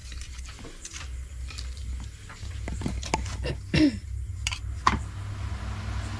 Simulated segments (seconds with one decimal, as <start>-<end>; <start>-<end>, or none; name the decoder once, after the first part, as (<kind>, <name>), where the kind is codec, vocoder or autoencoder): 4.0-5.0 (vocoder, BigVGAN v2)